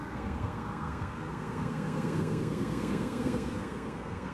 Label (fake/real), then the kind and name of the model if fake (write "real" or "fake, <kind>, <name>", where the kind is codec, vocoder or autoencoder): fake, codec, SNAC